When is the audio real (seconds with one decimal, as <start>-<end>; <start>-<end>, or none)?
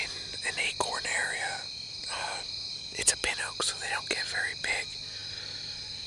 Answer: 0.0-6.1